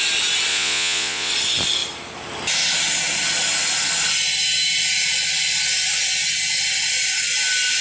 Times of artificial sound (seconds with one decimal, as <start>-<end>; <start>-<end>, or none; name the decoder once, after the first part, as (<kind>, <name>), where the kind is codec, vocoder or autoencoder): 0.5-1.3 (vocoder, Vocos)

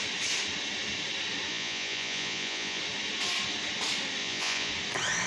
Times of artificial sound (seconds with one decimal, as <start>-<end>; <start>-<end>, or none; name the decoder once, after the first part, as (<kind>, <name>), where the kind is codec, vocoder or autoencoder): 1.5-2.8 (vocoder, Vocos); 4.2-4.7

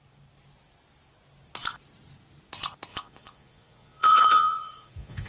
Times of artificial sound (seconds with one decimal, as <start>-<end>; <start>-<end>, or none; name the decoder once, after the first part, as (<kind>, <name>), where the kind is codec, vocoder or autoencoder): 2.9-5.3 (vocoder, Vocos)

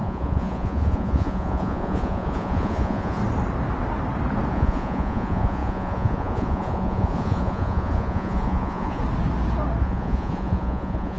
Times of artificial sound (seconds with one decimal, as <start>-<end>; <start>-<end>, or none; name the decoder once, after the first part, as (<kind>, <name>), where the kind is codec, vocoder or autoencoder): 0.0-3.2 (vocoder, Vocos); 4.5-9.0; 9.8-11.2

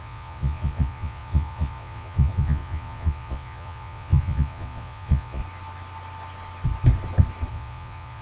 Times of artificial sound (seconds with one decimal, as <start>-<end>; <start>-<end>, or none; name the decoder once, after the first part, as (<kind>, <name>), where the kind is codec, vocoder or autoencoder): 0.0-5.4 (vocoder, Vocos); 7.5-8.2